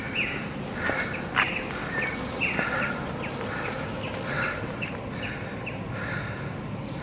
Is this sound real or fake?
real